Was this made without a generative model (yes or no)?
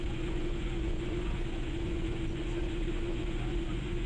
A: no